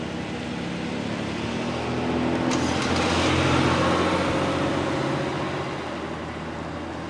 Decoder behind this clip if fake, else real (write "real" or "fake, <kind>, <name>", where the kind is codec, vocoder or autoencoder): real